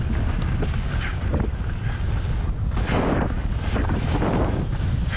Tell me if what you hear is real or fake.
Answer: real